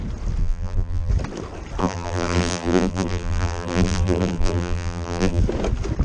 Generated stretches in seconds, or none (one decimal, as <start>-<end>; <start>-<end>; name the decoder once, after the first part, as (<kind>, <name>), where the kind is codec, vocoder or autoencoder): 0.4-1.1 (vocoder, BigVGAN v2); 1.8-5.4